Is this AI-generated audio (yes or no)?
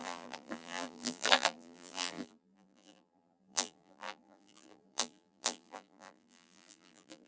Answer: yes